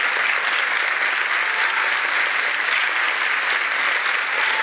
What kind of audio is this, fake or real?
real